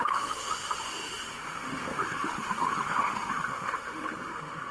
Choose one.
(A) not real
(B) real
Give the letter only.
A